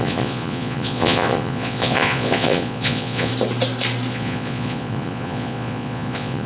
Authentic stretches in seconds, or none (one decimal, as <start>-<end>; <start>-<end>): 3.3-4.1